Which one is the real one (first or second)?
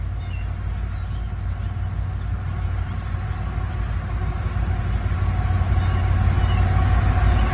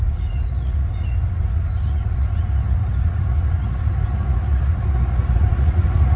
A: first